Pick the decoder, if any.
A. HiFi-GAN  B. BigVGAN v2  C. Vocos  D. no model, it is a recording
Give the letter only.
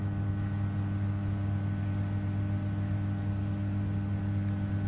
D